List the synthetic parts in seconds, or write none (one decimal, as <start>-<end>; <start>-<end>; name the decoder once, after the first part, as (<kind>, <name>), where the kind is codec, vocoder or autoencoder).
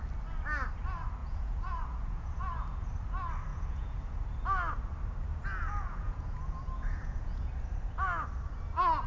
1.2-2.9 (vocoder, Vocos); 3.5-4.2; 5.3-7.5